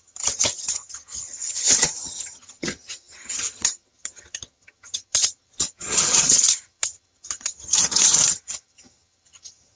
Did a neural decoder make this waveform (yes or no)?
yes